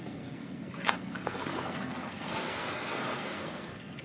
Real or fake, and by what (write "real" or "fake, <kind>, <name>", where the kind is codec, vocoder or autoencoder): fake, codec, SNAC